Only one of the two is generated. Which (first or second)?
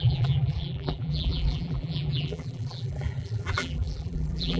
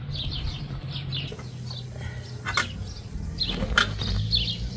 first